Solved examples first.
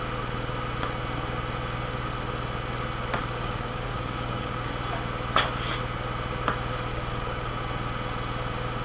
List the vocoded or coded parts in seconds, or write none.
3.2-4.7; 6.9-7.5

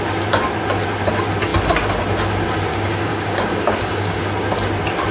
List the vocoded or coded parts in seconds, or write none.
2.7-4.2

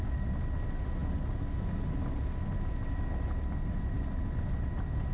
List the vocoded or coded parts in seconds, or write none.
none

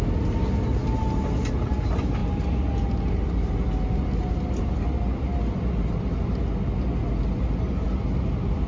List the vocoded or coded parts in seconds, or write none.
none

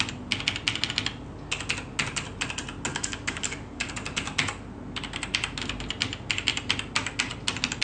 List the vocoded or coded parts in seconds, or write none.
2.9-3.9

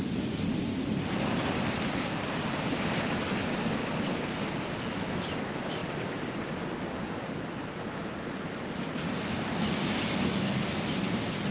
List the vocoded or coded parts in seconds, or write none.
none

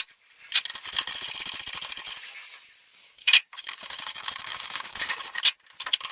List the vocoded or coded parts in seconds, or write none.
2.9-5.4